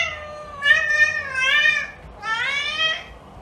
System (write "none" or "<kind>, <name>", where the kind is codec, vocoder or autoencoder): none